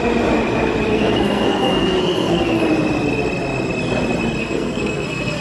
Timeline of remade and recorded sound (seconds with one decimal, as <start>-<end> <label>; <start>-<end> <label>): 0.0-0.9 recorded; 0.9-2.6 remade; 2.6-4.4 recorded; 4.4-5.4 remade